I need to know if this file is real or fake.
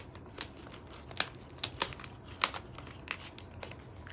real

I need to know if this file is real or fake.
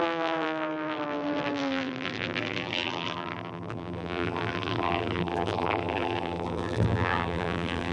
fake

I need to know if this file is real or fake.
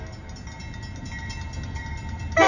real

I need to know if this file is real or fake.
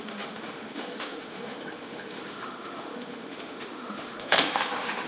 fake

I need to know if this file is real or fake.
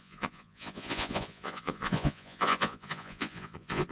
fake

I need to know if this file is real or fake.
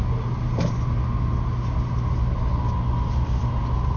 real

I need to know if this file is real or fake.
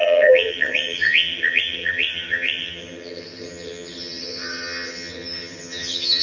fake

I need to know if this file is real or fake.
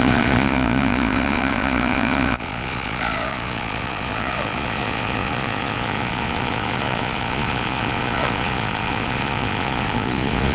fake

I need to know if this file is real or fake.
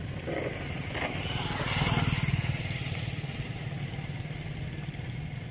real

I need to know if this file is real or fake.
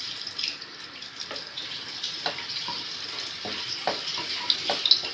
real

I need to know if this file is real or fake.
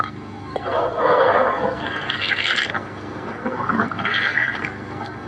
fake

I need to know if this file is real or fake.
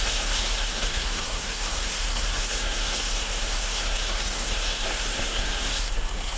fake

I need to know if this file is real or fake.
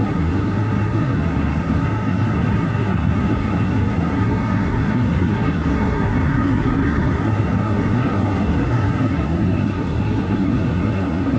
fake